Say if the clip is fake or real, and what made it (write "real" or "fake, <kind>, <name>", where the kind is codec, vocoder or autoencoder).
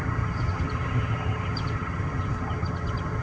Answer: fake, vocoder, HiFi-GAN